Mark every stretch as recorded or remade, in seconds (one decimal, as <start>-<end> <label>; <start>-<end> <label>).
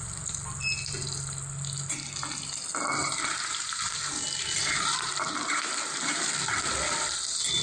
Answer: 0.0-3.0 recorded; 3.0-6.2 remade; 6.2-7.6 recorded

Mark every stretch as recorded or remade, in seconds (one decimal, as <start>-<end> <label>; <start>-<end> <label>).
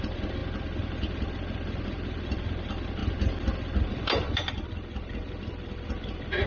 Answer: 0.0-0.4 remade; 0.4-2.2 recorded; 2.2-3.0 remade; 3.0-3.9 recorded; 3.9-6.5 remade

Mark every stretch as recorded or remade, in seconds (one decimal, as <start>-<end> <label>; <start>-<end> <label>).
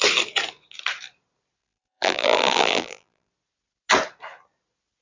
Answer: 0.0-1.6 recorded; 1.6-3.3 remade; 3.3-5.0 recorded